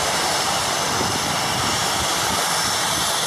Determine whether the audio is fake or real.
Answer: fake